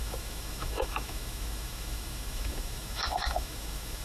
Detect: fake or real fake